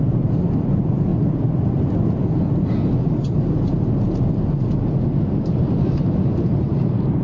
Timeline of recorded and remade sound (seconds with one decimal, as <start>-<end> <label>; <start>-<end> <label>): 0.0-1.1 remade; 1.1-5.4 recorded; 5.4-7.2 remade

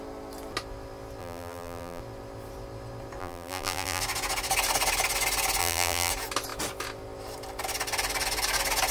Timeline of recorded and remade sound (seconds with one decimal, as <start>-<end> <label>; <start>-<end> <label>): 0.0-1.2 recorded; 1.2-2.0 remade; 2.0-3.2 recorded; 3.2-4.0 remade; 4.0-5.6 recorded; 5.6-6.1 remade; 6.1-8.9 recorded